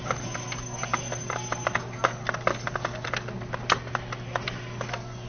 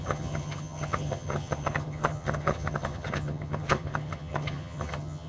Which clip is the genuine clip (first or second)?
first